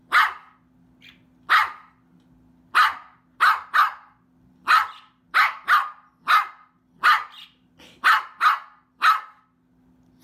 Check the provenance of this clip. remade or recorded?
recorded